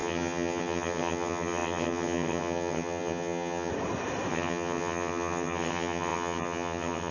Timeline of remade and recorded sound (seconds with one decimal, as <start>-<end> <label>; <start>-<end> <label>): 0.0-3.7 remade; 3.7-4.3 recorded; 4.3-7.1 remade